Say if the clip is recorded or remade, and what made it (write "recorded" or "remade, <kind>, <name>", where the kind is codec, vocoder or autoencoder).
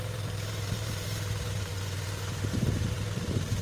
remade, vocoder, BigVGAN v2